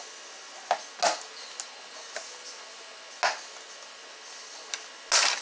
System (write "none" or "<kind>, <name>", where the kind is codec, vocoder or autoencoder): none